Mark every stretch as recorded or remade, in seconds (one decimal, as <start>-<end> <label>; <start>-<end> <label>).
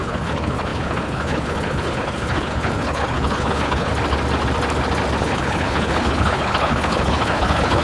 0.0-3.9 remade; 3.9-5.2 recorded; 5.2-7.8 remade